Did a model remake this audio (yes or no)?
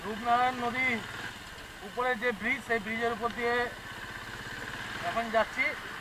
no